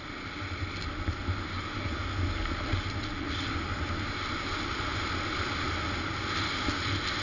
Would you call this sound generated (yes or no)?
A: no